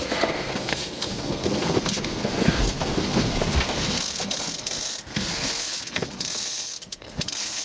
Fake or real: fake